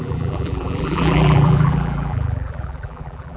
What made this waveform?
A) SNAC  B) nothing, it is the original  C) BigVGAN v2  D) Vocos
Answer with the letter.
C